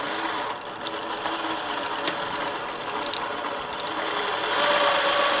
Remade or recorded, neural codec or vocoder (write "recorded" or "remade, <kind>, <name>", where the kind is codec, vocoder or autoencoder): recorded